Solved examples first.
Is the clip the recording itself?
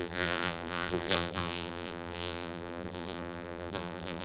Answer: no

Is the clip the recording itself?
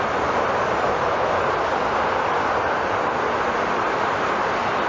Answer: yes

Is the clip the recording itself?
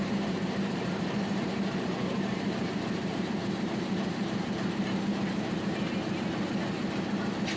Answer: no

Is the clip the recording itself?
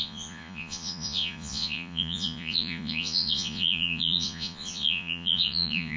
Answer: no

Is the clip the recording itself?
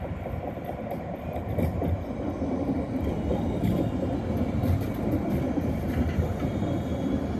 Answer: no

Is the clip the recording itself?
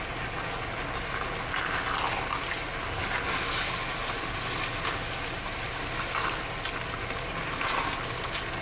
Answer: yes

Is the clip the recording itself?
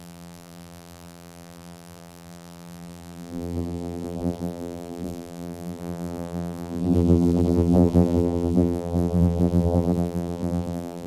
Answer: no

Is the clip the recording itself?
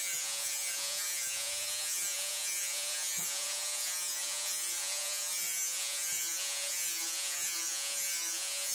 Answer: no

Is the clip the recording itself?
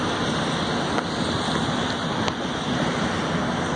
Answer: yes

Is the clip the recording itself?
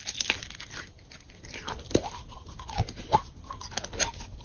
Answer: yes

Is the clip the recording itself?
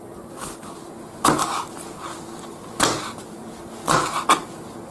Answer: yes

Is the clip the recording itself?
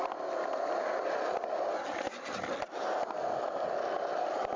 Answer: yes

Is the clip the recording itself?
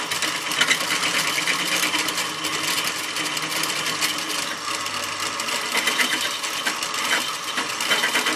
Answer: yes